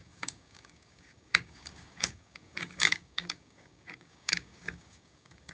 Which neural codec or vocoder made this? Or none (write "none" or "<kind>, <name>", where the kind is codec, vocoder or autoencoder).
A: codec, DAC